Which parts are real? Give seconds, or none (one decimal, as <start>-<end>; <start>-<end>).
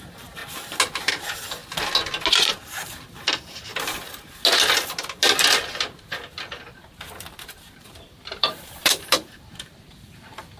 0.4-1.1; 1.6-2.3; 3.7-7.8